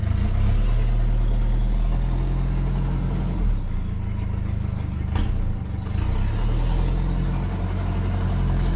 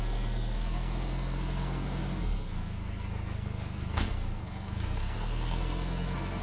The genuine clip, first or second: first